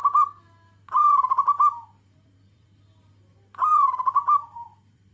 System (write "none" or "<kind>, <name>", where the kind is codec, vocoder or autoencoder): vocoder, BigVGAN v2